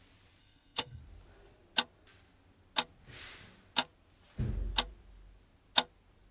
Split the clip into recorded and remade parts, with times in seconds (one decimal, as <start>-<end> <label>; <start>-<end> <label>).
0.0-0.4 recorded; 0.4-1.0 remade; 1.0-6.3 recorded